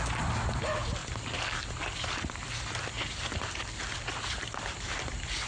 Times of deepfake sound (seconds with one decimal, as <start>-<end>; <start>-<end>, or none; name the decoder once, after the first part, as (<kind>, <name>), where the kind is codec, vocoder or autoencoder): none